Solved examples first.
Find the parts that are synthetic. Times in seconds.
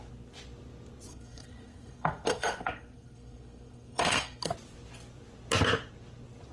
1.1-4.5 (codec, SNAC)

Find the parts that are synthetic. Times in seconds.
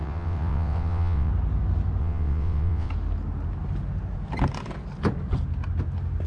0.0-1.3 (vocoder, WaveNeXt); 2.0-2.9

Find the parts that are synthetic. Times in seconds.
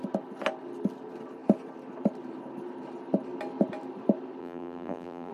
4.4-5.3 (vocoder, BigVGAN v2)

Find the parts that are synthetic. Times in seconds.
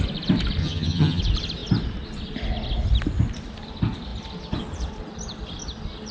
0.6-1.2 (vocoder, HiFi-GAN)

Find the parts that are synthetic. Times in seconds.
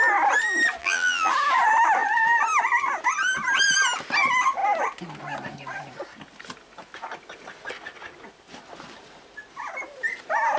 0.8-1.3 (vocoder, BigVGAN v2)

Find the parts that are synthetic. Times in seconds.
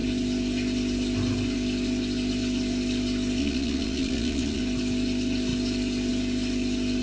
3.4-4.6 (vocoder, Vocos)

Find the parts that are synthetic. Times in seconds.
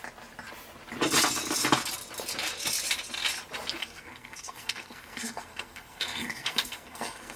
3.8-7.4 (codec, SNAC)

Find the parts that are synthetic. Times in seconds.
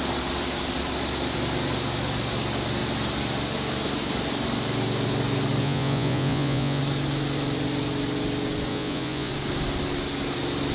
5.6-6.8 (vocoder, Vocos); 8.7-9.3